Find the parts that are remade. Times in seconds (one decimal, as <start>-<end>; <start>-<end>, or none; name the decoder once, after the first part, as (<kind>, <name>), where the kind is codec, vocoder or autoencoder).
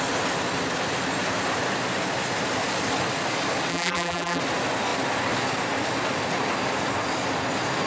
3.7-4.4 (vocoder, BigVGAN v2)